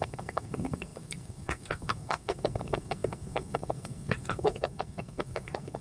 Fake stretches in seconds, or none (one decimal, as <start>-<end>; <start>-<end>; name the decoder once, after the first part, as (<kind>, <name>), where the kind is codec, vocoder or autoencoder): 0.0-5.8 (codec, SNAC)